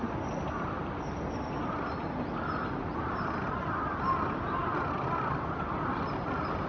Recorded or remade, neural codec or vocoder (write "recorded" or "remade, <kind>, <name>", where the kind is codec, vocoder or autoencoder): recorded